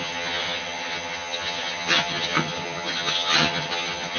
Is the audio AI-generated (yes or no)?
yes